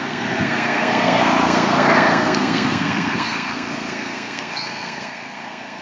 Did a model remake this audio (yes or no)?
yes